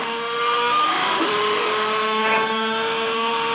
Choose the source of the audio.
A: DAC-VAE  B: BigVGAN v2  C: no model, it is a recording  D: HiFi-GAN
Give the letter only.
A